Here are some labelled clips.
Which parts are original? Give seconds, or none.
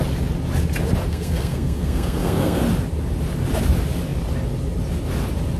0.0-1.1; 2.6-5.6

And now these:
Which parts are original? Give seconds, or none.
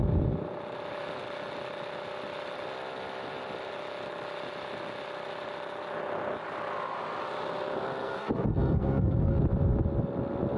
0.0-8.0; 9.4-10.6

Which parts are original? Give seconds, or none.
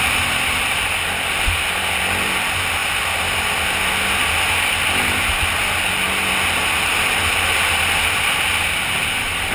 0.0-9.5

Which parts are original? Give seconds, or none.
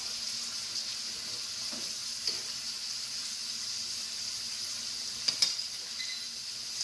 0.0-2.0; 6.1-6.8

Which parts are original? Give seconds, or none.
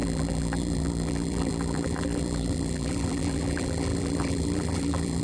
none